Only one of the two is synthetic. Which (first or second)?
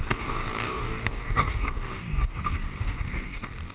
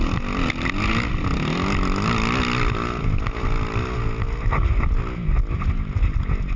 first